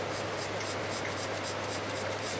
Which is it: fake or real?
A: fake